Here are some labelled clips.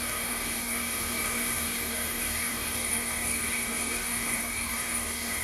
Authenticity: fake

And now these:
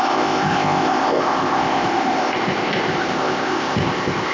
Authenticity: fake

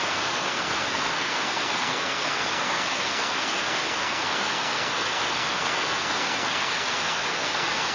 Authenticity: fake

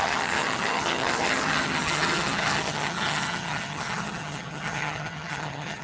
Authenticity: fake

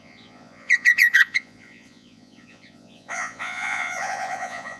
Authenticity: fake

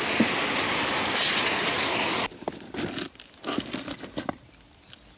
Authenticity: real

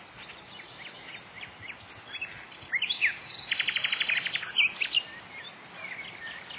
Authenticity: real